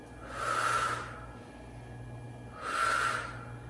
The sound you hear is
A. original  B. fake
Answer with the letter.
A